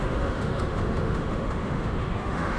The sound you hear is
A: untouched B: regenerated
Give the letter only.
B